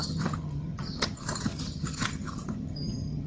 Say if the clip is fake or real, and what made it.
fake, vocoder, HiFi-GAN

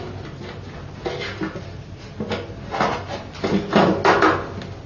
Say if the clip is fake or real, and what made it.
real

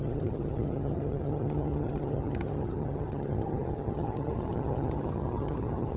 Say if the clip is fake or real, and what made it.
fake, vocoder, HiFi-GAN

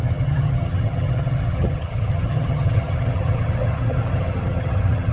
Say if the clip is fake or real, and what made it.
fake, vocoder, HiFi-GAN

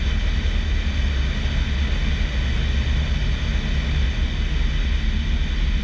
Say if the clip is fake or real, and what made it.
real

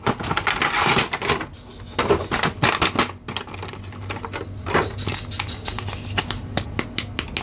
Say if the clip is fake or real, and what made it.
real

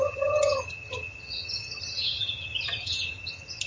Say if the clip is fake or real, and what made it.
fake, vocoder, HiFi-GAN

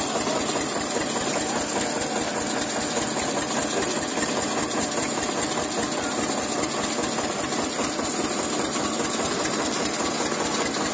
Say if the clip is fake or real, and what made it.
real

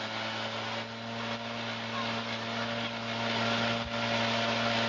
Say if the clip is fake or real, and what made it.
real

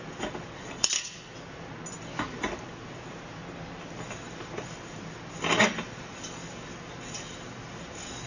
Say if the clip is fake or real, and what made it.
real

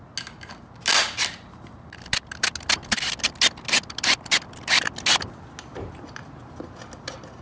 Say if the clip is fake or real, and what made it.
real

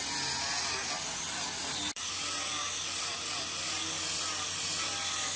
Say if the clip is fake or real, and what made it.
real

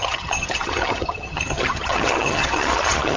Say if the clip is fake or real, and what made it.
fake, vocoder, HiFi-GAN